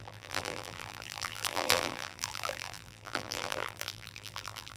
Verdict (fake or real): fake